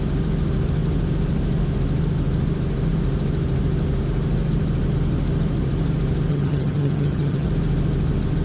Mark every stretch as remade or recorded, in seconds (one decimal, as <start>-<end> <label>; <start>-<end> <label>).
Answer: 0.0-6.3 recorded; 6.3-7.5 remade; 7.5-8.4 recorded